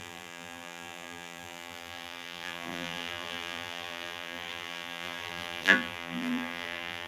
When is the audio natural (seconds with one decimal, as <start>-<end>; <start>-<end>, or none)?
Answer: none